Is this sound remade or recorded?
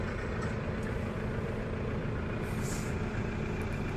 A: recorded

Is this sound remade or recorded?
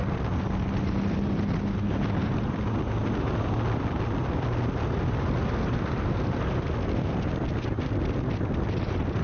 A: recorded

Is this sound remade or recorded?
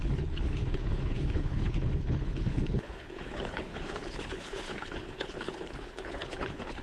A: remade